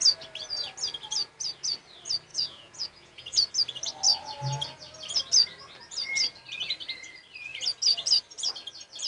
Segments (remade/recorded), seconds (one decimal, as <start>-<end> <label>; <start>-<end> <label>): 0.0-2.3 recorded; 2.3-3.5 remade; 3.5-9.1 recorded